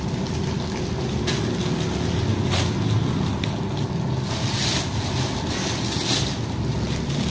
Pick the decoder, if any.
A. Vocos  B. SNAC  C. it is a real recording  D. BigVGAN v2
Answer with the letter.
C